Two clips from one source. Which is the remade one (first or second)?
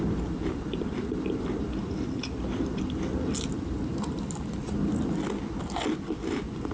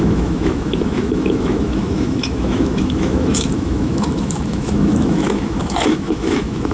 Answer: second